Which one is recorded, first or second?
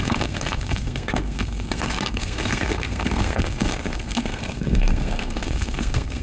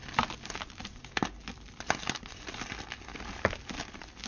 second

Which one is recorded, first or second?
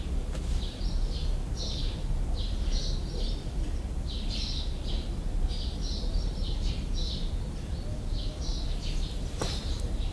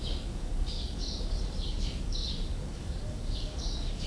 first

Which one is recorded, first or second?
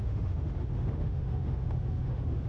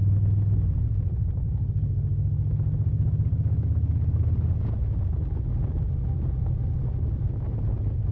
second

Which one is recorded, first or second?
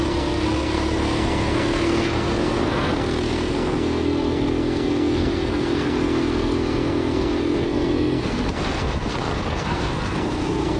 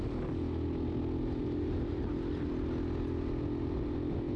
second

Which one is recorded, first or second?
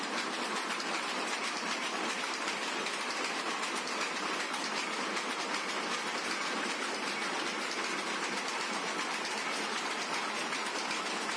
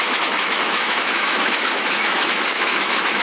first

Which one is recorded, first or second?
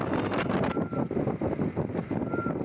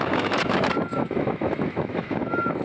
first